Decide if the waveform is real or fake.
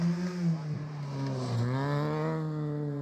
real